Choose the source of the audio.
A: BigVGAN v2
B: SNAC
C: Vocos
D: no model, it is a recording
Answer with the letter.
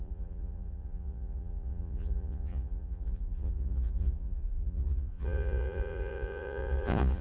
C